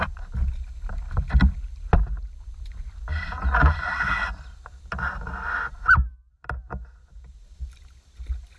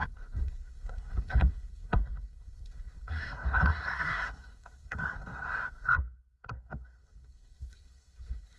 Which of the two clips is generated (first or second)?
second